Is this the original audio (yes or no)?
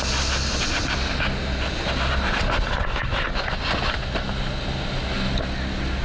yes